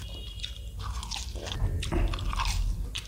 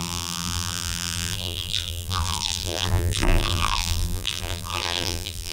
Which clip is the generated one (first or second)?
second